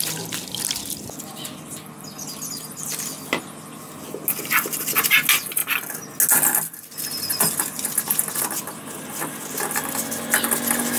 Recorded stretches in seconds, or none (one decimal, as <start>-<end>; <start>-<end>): 0.0-11.0